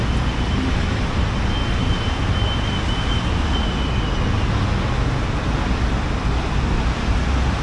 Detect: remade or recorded recorded